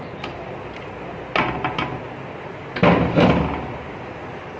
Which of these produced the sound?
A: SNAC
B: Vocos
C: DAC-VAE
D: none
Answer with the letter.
D